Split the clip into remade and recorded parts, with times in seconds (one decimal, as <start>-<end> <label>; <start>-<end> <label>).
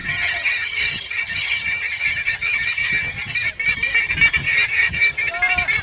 0.0-3.5 remade; 3.5-4.4 recorded; 4.4-5.3 remade; 5.3-5.8 recorded